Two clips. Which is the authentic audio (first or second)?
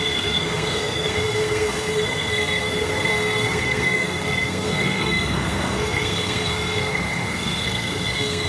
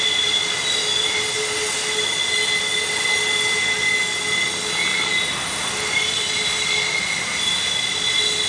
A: second